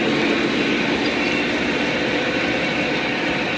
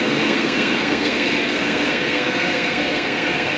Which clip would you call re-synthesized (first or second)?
second